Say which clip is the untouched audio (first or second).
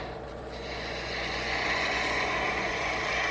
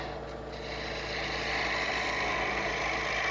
second